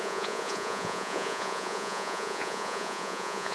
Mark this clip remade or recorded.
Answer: remade